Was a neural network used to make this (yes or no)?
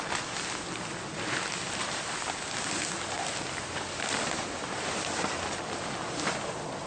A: no